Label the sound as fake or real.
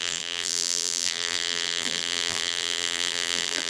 fake